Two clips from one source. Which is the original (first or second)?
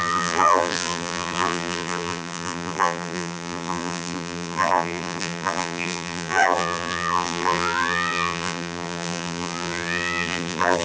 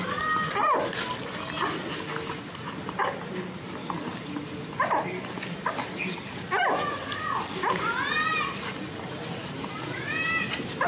second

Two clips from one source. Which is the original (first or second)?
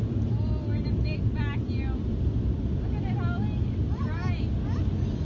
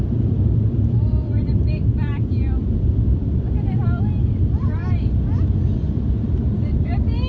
first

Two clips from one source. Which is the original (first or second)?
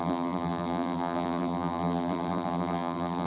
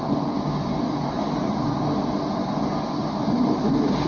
second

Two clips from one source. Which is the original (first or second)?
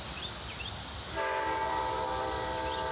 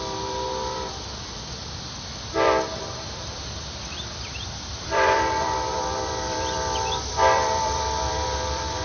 first